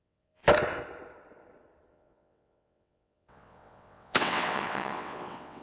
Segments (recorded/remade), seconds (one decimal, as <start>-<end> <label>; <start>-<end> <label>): 0.0-0.4 remade; 0.4-1.9 recorded; 1.9-5.6 remade